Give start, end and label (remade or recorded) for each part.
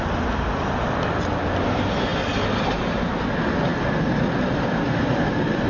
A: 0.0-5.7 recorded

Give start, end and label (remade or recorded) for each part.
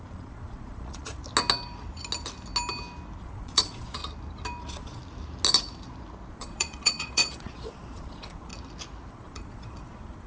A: 0.0-1.2 remade; 1.2-3.2 recorded; 3.2-4.0 remade; 4.0-4.6 recorded; 4.6-5.0 remade; 5.0-6.3 recorded; 6.3-8.5 remade; 8.5-9.1 recorded; 9.1-10.3 remade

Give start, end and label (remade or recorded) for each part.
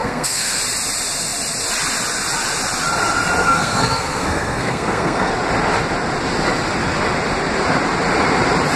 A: 0.0-0.6 remade; 0.6-3.4 recorded; 3.4-5.3 remade; 5.3-8.8 recorded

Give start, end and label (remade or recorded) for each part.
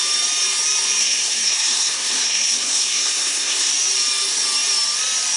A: 0.0-1.0 recorded; 1.0-3.7 remade; 3.7-5.4 recorded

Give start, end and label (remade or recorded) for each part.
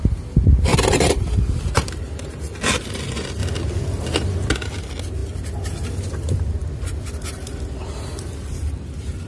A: 0.0-0.7 recorded; 0.7-2.3 remade; 2.3-9.3 recorded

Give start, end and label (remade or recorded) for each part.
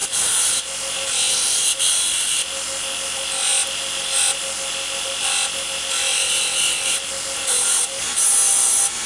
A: 0.0-9.1 recorded